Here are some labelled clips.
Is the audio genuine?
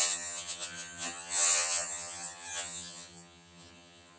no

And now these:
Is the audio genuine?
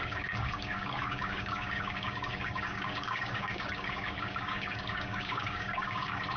no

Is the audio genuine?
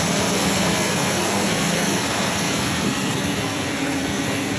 no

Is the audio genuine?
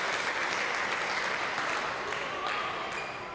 yes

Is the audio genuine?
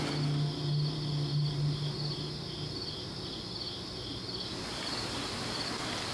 yes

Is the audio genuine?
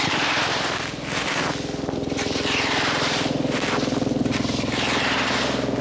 yes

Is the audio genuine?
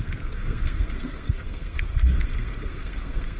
no